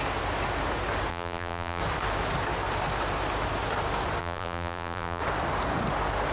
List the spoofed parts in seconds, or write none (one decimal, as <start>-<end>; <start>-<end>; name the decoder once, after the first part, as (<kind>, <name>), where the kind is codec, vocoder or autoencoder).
1.1-1.8 (vocoder, BigVGAN v2); 4.2-5.2